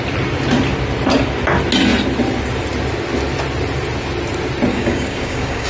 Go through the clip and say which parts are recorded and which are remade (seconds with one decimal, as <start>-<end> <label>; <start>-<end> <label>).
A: 0.0-4.7 recorded; 4.7-5.7 remade